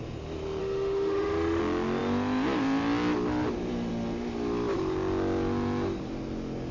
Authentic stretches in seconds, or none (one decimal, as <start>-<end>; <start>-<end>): 0.0-0.6; 1.6-6.7